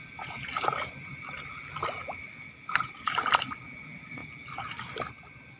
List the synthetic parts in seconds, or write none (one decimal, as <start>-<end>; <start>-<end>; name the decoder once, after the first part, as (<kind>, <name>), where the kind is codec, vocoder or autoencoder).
none